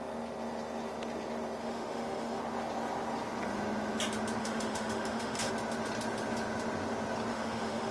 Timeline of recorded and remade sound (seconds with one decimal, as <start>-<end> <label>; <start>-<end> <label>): 0.0-1.6 recorded; 1.6-2.4 remade; 2.4-4.4 recorded; 4.4-5.5 remade; 5.5-7.3 recorded; 7.3-7.9 remade